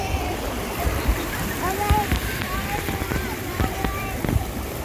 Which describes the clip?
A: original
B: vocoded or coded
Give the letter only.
B